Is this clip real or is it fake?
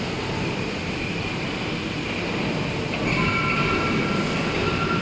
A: real